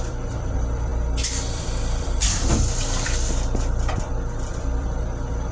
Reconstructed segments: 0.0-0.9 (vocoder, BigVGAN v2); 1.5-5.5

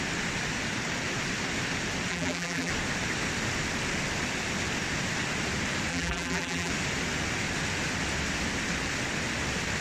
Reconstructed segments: 2.1-2.7 (vocoder, BigVGAN v2); 5.9-6.7

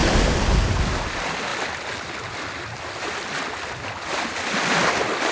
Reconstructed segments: none

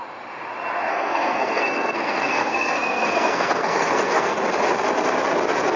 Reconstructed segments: 0.9-4.4 (codec, SNAC)

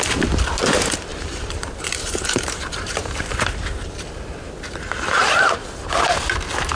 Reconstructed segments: 1.1-5.2 (vocoder, BigVGAN v2)